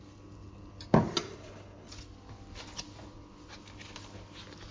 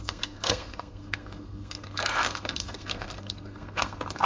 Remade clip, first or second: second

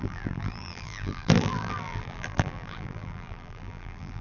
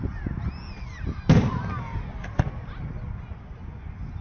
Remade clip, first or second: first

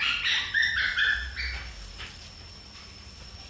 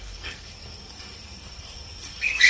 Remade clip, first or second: second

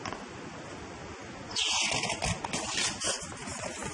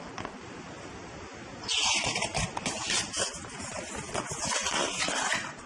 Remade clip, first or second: second